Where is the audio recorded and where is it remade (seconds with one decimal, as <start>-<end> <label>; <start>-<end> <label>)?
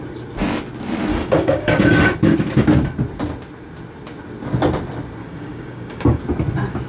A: 0.0-1.1 recorded; 1.1-1.8 remade; 1.8-5.2 recorded; 5.2-6.2 remade; 6.2-6.9 recorded